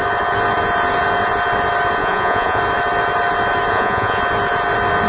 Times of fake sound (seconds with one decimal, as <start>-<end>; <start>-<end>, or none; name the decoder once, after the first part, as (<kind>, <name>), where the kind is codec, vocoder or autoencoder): 2.0-2.6 (vocoder, Vocos); 3.7-4.2